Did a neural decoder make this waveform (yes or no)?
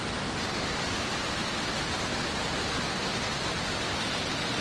no